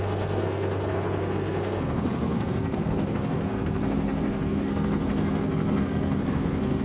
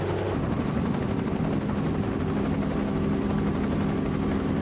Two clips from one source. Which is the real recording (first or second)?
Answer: second